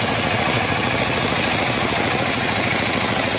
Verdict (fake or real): fake